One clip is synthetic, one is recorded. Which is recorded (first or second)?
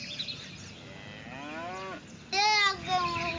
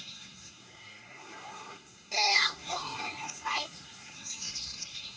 first